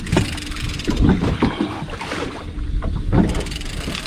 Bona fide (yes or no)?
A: yes